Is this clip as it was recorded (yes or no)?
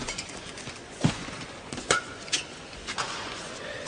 no